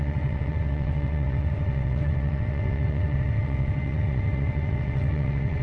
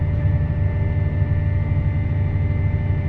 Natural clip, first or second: second